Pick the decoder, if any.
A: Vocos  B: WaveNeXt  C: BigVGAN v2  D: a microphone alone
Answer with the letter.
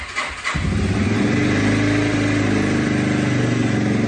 D